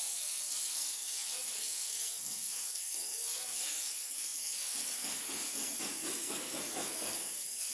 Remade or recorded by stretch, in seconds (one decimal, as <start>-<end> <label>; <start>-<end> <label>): 0.0-7.7 remade

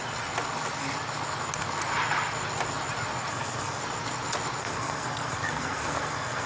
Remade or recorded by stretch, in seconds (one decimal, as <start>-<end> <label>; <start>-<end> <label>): 0.0-3.3 recorded; 3.3-3.8 remade; 3.8-4.6 recorded; 4.6-6.5 remade

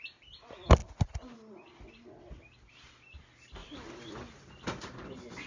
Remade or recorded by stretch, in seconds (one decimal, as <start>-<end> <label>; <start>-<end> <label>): 0.0-5.5 recorded